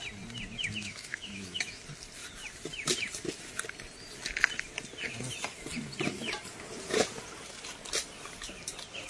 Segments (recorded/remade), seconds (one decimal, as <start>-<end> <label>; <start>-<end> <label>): 0.0-0.8 recorded; 0.8-1.8 remade; 1.8-9.1 recorded